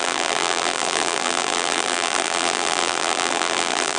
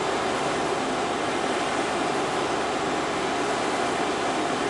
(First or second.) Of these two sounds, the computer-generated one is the first